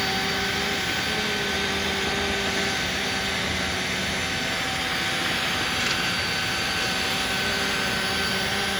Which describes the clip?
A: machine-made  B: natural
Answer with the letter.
B